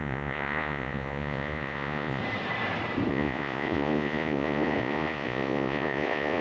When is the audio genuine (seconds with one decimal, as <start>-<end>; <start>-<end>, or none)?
2.2-3.1